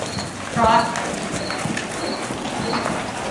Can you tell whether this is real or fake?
real